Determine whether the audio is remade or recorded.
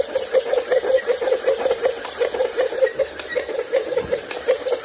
recorded